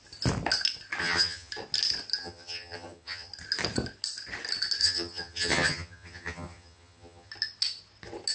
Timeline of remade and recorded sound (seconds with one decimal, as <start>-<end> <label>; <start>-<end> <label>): 0.0-1.0 recorded; 1.0-1.5 remade; 1.5-2.2 recorded; 2.2-3.3 remade; 3.3-4.8 recorded; 4.8-7.3 remade; 7.3-8.3 recorded